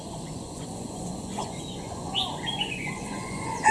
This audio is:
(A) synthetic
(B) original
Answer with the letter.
A